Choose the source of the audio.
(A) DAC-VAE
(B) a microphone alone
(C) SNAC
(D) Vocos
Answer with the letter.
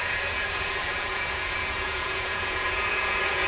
D